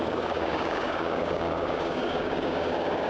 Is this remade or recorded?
remade